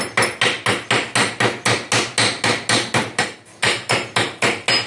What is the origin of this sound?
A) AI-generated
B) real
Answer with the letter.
B